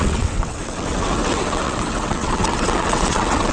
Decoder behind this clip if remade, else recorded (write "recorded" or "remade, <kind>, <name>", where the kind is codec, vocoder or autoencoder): remade, vocoder, WaveNeXt